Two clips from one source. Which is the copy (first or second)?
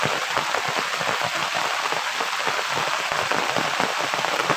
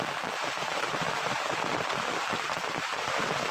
second